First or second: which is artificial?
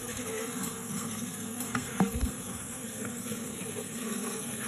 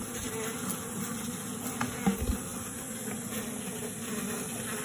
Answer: first